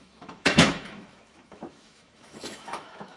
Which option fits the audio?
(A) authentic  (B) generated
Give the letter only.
B